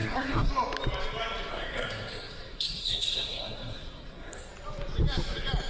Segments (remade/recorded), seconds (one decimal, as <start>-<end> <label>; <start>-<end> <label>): 0.0-0.5 remade; 0.5-1.5 recorded; 1.5-4.5 remade; 4.5-5.7 recorded